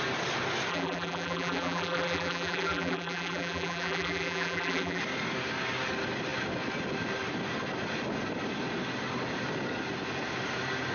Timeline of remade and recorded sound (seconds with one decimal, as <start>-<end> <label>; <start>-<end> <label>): 0.0-0.7 recorded; 0.7-5.0 remade; 5.0-10.9 recorded